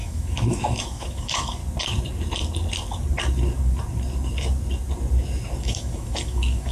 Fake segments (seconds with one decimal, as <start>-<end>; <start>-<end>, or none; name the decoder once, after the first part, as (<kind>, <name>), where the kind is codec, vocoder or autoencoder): 0.0-1.6 (autoencoder, DAC-VAE); 5.6-6.7